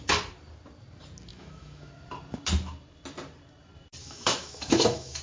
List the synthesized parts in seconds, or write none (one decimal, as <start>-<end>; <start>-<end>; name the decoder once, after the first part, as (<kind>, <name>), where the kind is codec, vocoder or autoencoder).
1.3-1.9 (autoencoder, DAC-VAE); 4.0-5.2